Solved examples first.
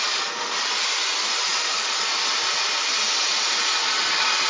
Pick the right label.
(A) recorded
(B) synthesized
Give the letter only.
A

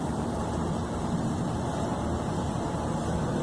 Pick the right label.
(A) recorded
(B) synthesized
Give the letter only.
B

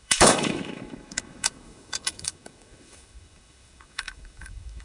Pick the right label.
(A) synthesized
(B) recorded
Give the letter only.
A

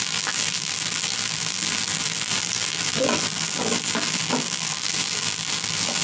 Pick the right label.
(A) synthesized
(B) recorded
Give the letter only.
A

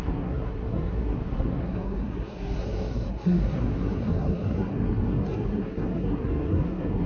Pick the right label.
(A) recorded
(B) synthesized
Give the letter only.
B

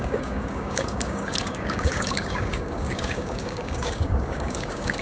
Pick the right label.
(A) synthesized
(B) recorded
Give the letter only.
A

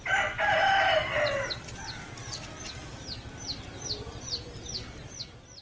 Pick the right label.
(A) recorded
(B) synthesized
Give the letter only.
A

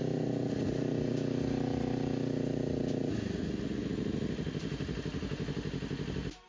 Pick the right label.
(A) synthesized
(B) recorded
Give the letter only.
B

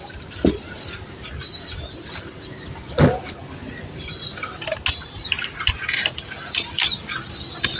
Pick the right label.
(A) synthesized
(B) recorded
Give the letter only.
B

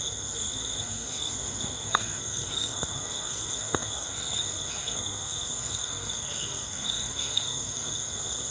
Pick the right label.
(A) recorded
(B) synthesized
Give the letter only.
B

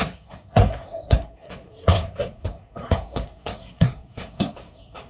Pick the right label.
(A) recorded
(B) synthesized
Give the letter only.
B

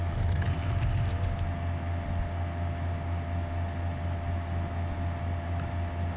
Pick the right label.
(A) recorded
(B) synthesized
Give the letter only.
A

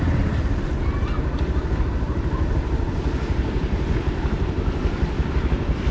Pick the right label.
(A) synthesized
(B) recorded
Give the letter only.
B